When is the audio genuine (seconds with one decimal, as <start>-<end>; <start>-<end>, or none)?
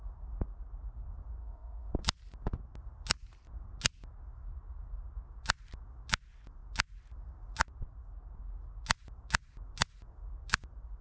0.0-1.4; 1.9-11.0